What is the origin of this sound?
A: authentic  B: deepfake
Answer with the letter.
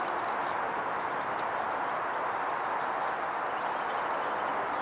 A